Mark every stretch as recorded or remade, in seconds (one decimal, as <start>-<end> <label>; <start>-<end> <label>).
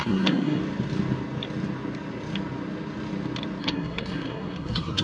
0.0-0.6 remade; 0.6-3.6 recorded; 3.6-5.0 remade